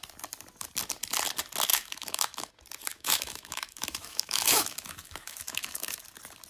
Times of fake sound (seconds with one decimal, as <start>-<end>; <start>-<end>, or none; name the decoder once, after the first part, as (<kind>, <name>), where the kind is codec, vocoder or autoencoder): 1.7-2.5 (autoencoder, DAC-VAE); 2.9-6.0